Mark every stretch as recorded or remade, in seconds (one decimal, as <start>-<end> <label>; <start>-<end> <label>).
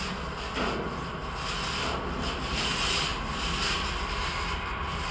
0.0-5.1 recorded